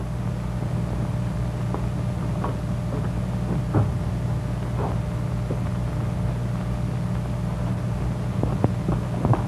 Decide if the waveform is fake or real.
real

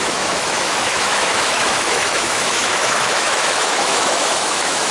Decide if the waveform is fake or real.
fake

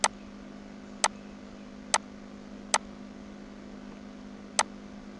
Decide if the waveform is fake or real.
real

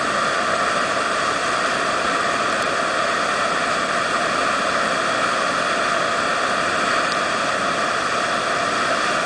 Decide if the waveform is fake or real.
real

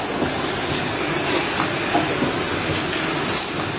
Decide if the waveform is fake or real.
real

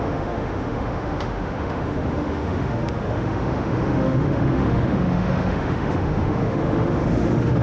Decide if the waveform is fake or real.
fake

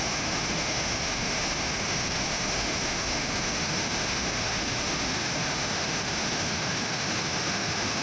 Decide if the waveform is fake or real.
fake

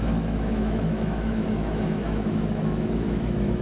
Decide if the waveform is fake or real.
fake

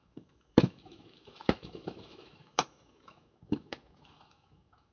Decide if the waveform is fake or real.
fake